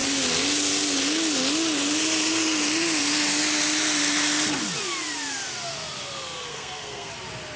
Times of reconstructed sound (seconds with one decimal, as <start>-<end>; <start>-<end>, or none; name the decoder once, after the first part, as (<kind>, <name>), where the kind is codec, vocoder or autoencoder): 6.5-7.1 (codec, SNAC)